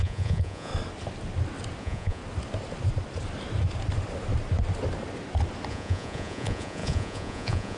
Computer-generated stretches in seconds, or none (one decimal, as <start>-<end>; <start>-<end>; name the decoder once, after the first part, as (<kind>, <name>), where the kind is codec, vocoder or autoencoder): 0.0-0.7 (vocoder, Vocos); 1.8-2.2; 5.7-7.8